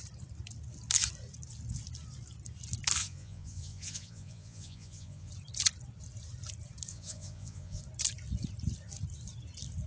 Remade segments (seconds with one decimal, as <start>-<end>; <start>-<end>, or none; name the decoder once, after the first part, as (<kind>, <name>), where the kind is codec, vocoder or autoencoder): 3.0-5.3 (vocoder, Vocos); 6.9-7.8